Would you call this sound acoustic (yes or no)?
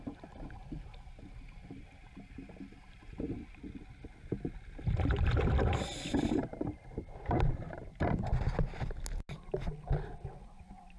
yes